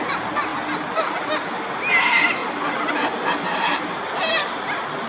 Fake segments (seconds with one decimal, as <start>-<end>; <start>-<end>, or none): none